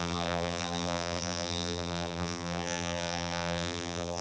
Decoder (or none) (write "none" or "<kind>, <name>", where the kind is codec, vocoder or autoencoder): vocoder, BigVGAN v2